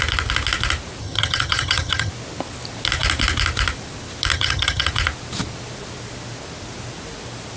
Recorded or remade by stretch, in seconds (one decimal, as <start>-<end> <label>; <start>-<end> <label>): 0.0-1.0 recorded; 1.0-2.1 remade; 2.1-4.3 recorded; 4.3-4.9 remade; 4.9-7.6 recorded